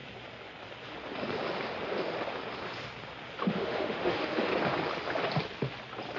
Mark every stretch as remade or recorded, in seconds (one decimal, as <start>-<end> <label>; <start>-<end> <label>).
0.0-3.4 recorded; 3.4-4.5 remade; 4.5-6.2 recorded